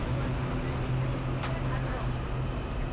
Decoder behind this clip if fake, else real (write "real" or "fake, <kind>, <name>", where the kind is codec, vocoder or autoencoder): real